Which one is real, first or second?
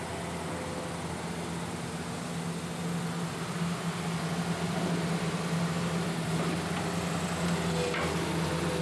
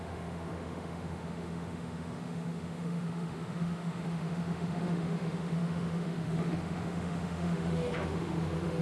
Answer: first